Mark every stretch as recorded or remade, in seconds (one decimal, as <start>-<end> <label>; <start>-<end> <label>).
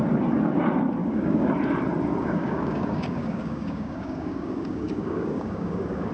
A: 0.0-1.0 recorded; 1.0-1.5 remade; 1.5-2.2 recorded; 2.2-6.1 remade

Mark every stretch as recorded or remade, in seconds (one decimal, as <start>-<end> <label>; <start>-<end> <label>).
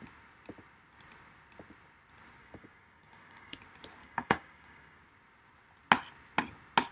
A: 0.0-2.4 recorded; 2.4-3.6 remade; 3.6-4.0 recorded; 4.0-5.0 remade; 5.0-6.9 recorded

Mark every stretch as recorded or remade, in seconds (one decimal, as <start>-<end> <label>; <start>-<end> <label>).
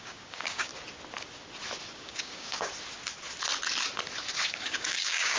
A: 0.0-0.7 remade; 0.7-1.9 recorded; 1.9-2.7 remade; 2.7-4.5 recorded; 4.5-5.4 remade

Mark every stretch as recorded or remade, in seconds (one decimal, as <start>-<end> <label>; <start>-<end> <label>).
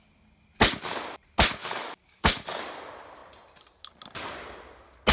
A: 0.0-1.6 recorded; 1.6-2.6 remade; 2.6-5.1 recorded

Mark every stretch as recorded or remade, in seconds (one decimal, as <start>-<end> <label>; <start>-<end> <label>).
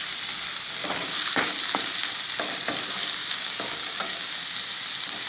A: 0.0-1.0 recorded; 1.0-1.5 remade; 1.5-3.2 recorded; 3.2-4.3 remade; 4.3-5.3 recorded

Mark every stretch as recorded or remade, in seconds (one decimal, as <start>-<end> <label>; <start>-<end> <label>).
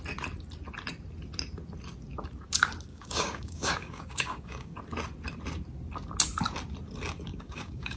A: 0.0-2.9 recorded; 2.9-4.8 remade; 4.8-7.3 recorded; 7.3-8.0 remade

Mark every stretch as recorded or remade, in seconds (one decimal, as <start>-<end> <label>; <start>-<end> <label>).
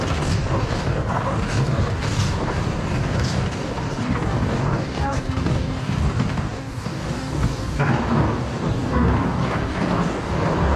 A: 0.0-10.8 remade